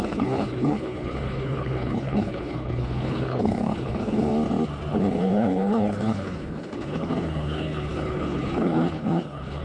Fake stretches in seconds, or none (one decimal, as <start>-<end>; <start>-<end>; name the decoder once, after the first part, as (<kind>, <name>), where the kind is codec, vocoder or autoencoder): 0.0-4.3 (codec, HILCodec); 4.9-9.6